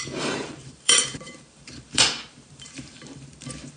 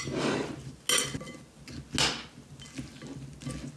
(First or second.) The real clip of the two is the second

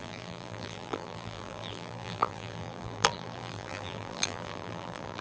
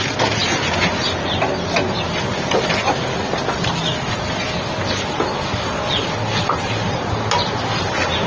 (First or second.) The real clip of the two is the second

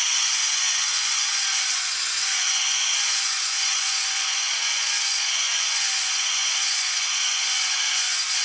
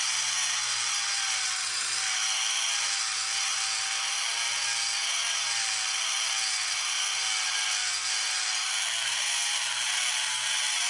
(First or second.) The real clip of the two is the second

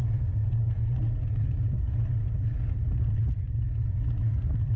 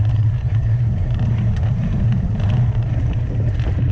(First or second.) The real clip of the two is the first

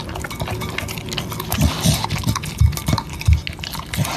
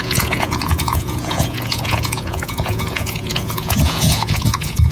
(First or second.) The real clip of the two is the first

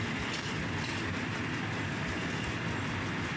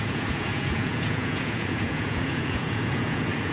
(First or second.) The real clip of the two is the first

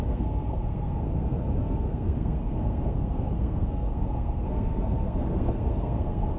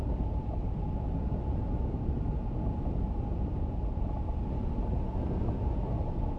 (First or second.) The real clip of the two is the second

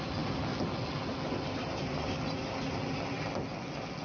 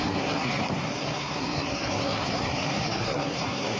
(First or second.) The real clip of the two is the first